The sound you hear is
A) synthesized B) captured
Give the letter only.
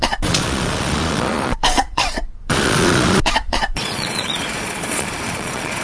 A